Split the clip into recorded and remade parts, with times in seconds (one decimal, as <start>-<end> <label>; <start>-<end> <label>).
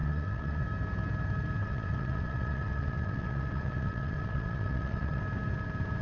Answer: 0.0-0.6 remade; 0.6-1.6 recorded; 1.6-5.2 remade; 5.2-6.0 recorded